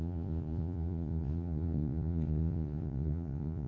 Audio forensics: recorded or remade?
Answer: remade